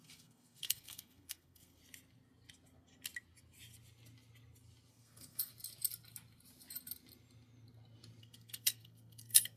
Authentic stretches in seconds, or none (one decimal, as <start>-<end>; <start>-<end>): 1.8-4.9; 5.5-8.2